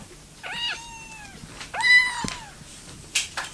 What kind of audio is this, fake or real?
real